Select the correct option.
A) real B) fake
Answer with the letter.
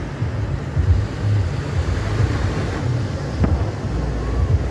A